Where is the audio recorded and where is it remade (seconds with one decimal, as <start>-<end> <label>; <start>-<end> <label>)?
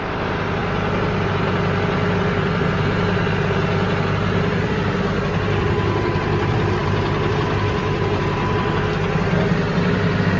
0.0-10.4 recorded